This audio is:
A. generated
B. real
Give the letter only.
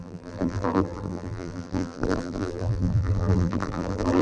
A